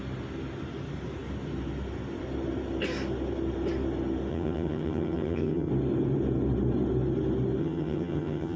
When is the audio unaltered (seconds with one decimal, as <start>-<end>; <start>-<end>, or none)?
0.0-4.3; 5.7-7.6